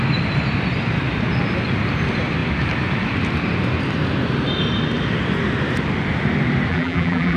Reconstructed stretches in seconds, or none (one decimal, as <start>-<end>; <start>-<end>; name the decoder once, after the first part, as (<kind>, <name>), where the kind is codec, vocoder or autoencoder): 6.7-7.4 (vocoder, BigVGAN v2)

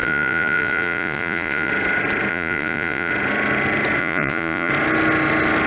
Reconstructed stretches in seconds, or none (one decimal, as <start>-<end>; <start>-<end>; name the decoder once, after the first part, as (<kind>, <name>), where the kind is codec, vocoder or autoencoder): 0.0-1.7 (vocoder, Vocos); 2.3-3.1; 4.0-4.7